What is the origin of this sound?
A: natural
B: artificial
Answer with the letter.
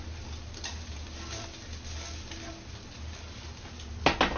A